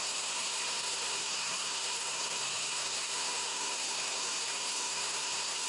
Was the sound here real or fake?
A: fake